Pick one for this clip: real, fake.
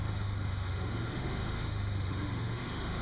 fake